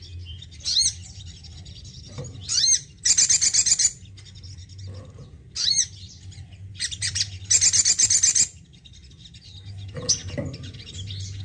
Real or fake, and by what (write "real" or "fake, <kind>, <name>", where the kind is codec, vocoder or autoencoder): real